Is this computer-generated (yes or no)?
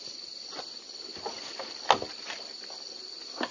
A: no